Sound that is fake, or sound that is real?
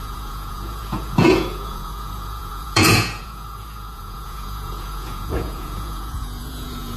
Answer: fake